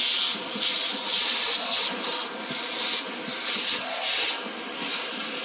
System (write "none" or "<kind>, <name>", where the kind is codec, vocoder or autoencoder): none